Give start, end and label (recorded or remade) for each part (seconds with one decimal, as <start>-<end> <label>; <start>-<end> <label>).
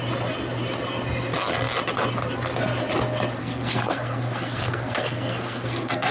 0.0-3.4 recorded; 3.4-6.1 remade